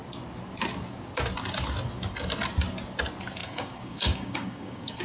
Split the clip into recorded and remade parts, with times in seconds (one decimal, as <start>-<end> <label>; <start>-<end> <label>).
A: 0.0-3.4 recorded; 3.4-5.0 remade